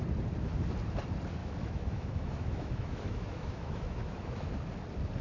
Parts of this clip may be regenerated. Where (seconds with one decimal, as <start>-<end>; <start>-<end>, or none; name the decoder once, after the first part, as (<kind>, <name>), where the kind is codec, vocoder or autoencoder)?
1.4-4.5 (autoencoder, DAC-VAE)